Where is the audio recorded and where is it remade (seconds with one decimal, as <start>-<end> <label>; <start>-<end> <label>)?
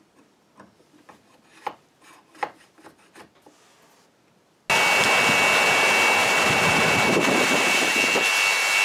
0.0-6.2 recorded; 6.2-7.9 remade; 7.9-8.8 recorded